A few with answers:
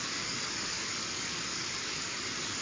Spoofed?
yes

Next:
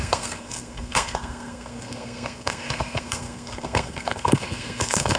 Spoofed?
yes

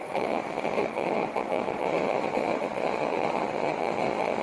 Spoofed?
yes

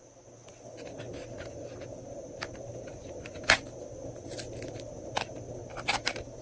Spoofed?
no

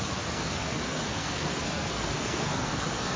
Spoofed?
yes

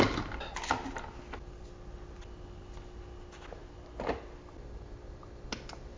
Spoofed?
no